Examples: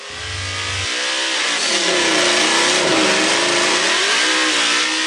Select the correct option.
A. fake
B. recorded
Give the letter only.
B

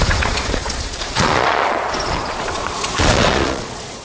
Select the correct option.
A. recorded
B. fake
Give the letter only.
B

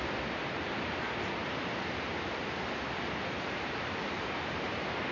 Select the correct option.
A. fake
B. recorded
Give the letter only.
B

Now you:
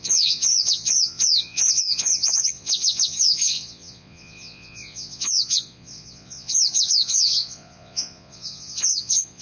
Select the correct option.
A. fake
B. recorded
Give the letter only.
A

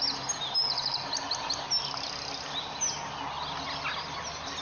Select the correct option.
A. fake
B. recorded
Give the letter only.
B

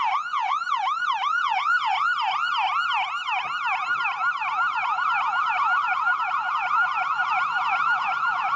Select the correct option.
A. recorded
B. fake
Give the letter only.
A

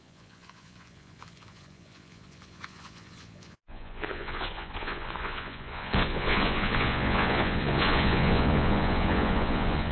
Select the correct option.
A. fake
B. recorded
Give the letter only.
A